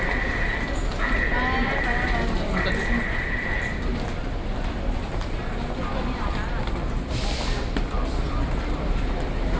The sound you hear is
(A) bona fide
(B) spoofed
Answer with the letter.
A